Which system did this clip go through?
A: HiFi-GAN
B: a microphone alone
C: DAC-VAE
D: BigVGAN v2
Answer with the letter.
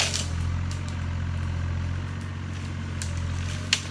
B